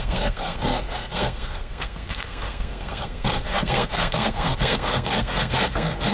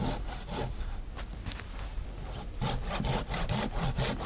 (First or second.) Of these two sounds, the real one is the second